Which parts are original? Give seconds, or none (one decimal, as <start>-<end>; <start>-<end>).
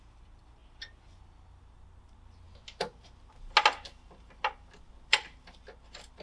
0.0-6.2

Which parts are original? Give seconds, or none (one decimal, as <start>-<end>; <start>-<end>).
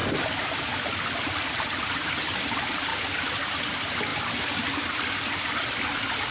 0.0-1.8; 2.9-3.5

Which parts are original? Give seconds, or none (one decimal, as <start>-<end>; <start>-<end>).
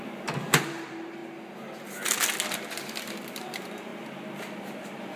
1.2-3.4; 3.9-5.2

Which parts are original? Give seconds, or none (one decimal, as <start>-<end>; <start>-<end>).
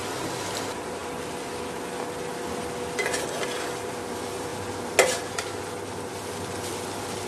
0.0-7.3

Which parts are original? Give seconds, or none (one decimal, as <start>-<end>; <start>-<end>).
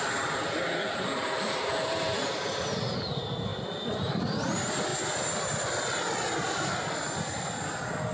3.5-4.2; 4.9-5.5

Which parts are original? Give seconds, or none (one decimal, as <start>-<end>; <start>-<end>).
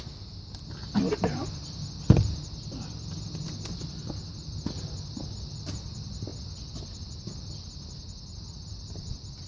0.0-9.5